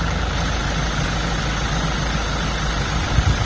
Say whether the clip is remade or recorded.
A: recorded